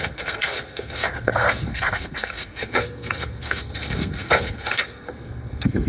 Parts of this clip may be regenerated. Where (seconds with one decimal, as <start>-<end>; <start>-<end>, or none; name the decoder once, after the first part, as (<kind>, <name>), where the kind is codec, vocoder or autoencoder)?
0.0-5.9 (codec, SNAC)